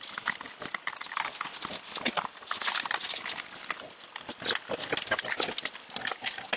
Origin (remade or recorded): recorded